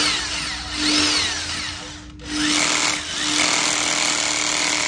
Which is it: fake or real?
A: real